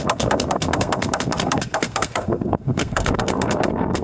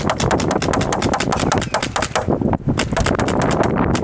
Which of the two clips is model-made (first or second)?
first